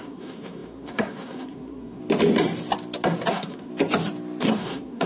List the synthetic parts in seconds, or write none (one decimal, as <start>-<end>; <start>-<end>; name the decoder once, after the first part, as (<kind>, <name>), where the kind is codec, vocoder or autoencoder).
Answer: 0.0-2.0 (codec, SNAC); 3.3-3.7; 4.4-5.1